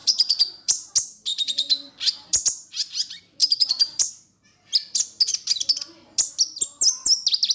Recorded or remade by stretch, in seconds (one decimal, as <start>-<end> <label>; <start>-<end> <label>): 0.0-0.9 remade; 0.9-1.3 recorded; 1.3-1.9 remade; 1.9-3.4 recorded; 3.4-4.1 remade; 4.1-7.5 recorded